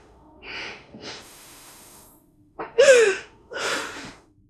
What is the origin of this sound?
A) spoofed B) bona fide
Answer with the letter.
A